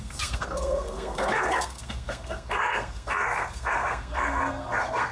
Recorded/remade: remade